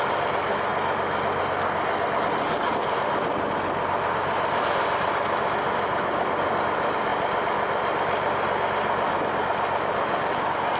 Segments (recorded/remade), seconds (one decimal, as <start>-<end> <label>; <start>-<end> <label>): 0.0-10.8 recorded